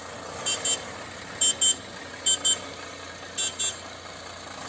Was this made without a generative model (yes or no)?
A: yes